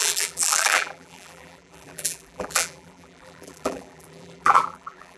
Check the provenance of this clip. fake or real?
fake